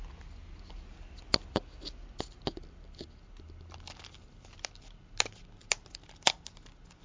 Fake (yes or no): no